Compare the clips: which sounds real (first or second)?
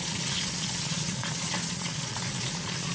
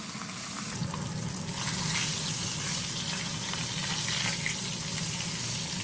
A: second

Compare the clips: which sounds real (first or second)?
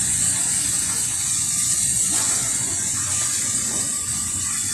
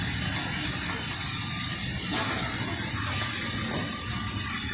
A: second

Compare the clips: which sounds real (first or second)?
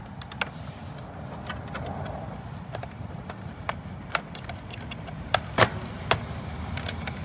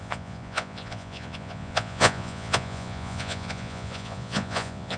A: first